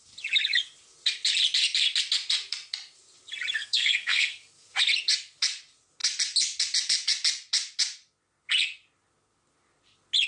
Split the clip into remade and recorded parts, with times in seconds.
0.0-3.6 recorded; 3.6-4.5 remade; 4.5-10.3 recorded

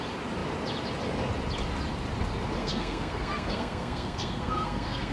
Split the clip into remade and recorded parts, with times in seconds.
0.0-2.6 recorded; 2.6-5.1 remade

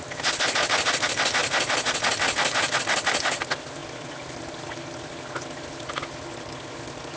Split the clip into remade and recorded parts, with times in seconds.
0.0-7.2 recorded

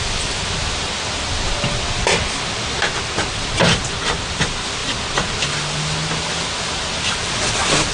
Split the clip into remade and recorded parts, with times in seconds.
0.0-7.9 recorded